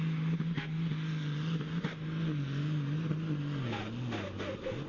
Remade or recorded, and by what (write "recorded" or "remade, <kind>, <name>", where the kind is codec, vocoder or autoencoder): recorded